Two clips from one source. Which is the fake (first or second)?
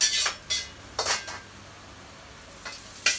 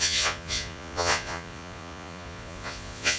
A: second